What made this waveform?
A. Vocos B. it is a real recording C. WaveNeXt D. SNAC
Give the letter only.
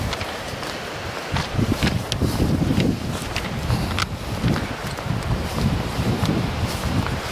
B